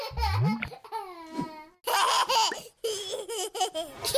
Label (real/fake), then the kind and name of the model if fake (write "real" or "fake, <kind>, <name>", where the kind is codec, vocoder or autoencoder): real